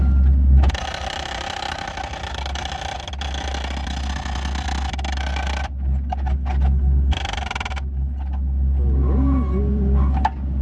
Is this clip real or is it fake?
real